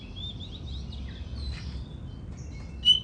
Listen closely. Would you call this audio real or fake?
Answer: real